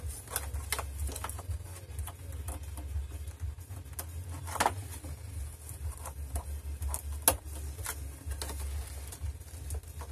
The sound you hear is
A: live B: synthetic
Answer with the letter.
A